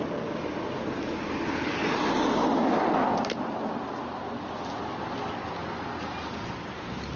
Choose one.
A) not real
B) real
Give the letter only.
B